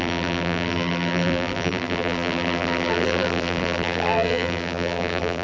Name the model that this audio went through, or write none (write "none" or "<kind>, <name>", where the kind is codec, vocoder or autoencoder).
vocoder, BigVGAN v2